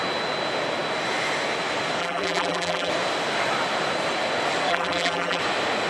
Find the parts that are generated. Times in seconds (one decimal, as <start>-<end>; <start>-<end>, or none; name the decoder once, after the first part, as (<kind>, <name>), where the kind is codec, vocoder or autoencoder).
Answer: 2.0-2.9 (vocoder, BigVGAN v2); 4.7-5.4